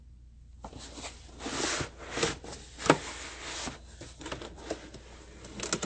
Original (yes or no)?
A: yes